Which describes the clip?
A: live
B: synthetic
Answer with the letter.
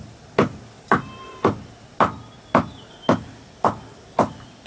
A